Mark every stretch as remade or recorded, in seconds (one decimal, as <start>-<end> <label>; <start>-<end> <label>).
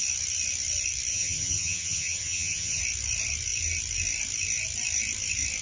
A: 0.0-1.1 recorded; 1.1-2.8 remade; 2.8-5.6 recorded